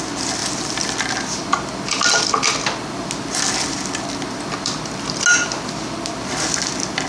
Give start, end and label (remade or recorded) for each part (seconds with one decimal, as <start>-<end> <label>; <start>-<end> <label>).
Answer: 0.0-7.1 recorded

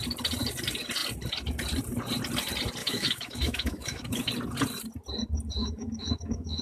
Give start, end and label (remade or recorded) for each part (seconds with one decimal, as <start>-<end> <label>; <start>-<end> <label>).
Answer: 0.0-2.8 recorded; 2.8-4.3 remade; 4.3-5.6 recorded; 5.6-6.6 remade

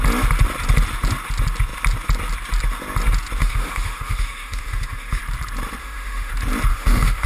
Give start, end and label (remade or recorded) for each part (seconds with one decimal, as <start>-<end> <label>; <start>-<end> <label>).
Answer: 0.0-3.4 recorded; 3.4-5.2 remade; 5.2-5.8 recorded; 5.8-6.3 remade; 6.3-6.7 recorded; 6.7-7.3 remade

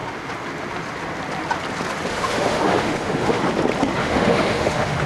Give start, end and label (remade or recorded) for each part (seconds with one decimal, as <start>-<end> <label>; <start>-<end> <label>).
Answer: 0.0-2.1 recorded; 2.1-3.4 remade; 3.4-4.0 recorded; 4.0-5.1 remade

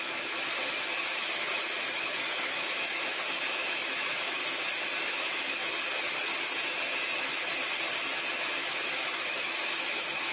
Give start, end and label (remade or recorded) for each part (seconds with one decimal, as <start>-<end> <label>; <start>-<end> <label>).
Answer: 0.0-4.4 remade; 4.4-5.0 recorded; 5.0-6.3 remade; 6.3-8.3 recorded; 8.3-10.3 remade

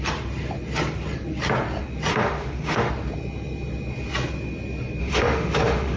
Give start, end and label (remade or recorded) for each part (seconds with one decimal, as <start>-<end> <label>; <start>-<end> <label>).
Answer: 0.0-2.1 recorded; 2.1-2.9 remade; 2.9-5.0 recorded; 5.0-6.0 remade

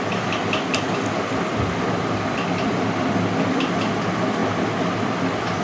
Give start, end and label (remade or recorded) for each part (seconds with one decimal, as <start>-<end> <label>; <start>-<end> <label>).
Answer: 0.0-5.6 recorded

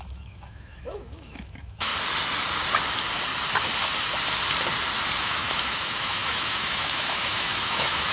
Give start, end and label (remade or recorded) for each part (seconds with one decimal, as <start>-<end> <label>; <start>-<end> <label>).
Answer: 0.0-1.9 remade; 1.9-5.2 recorded; 5.2-8.1 remade